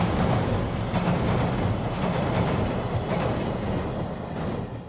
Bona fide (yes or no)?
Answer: yes